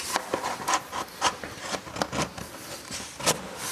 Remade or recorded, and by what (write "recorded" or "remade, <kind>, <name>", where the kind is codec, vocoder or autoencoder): recorded